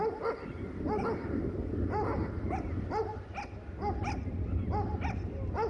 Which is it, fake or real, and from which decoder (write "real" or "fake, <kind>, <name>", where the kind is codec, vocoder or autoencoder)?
real